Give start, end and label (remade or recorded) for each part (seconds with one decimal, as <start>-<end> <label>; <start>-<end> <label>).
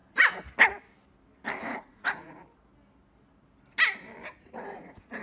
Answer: 0.0-1.6 recorded; 1.6-2.4 remade; 2.4-4.4 recorded; 4.4-5.2 remade